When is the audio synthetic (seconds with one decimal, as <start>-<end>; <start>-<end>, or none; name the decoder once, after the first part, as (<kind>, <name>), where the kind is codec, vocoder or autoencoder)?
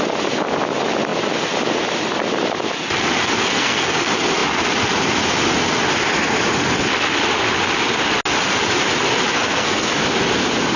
3.4-4.0 (codec, SNAC); 9.3-10.0